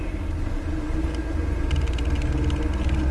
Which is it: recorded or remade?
recorded